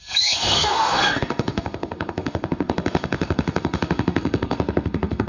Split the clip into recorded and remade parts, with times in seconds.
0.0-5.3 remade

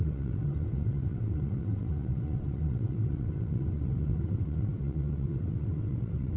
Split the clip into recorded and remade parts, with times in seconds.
0.0-6.4 remade

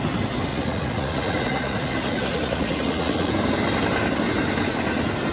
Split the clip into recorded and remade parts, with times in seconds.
0.0-0.5 recorded; 0.5-3.3 remade; 3.3-5.3 recorded

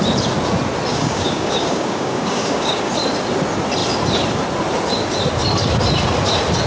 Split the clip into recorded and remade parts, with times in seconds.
0.0-0.9 recorded; 0.9-2.9 remade; 2.9-6.7 recorded

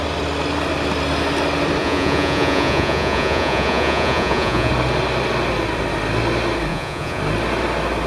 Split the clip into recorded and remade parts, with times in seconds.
0.0-1.8 recorded; 1.8-4.7 remade; 4.7-6.7 recorded; 6.7-7.2 remade; 7.2-8.1 recorded